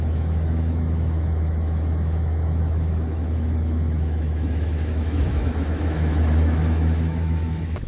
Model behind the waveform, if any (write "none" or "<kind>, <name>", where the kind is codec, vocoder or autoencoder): autoencoder, DAC-VAE